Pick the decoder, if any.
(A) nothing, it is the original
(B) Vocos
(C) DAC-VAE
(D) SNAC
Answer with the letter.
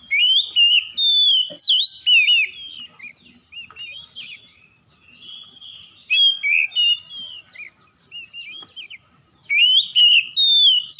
A